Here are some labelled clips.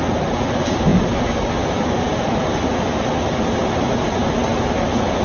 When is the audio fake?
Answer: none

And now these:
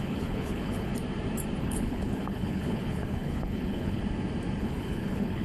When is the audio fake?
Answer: 0.0-0.9 (codec, HILCodec); 1.6-4.0; 4.6-5.4

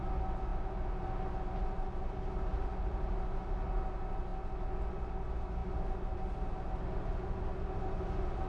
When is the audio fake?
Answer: none

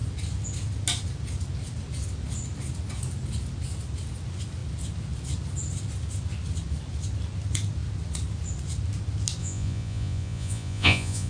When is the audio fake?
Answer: 9.4-11.3 (vocoder, Vocos)